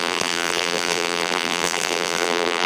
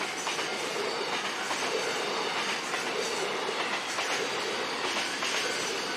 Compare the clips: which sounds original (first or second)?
second